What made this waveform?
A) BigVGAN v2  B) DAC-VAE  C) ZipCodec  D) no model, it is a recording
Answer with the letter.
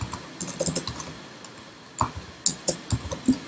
D